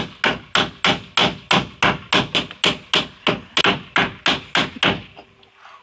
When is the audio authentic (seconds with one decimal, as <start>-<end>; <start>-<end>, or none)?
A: 0.0-5.8